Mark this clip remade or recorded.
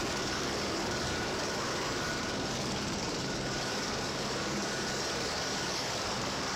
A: remade